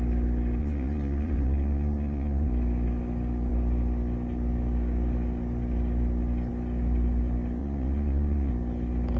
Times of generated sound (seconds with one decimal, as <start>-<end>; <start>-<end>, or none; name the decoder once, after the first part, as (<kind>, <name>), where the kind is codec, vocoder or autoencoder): 0.6-2.5 (vocoder, Vocos); 7.6-8.5